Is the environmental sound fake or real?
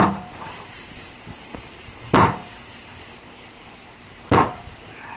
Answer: fake